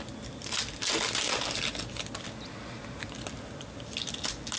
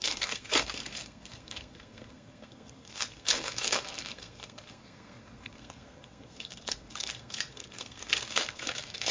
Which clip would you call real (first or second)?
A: first